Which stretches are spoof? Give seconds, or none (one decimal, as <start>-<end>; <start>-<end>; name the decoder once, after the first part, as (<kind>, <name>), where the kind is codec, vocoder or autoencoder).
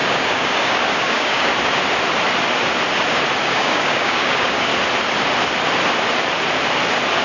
0.0-1.5 (codec, DAC); 3.4-4.7